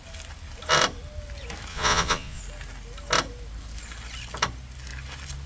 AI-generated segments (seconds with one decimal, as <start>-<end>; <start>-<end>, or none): 1.7-2.4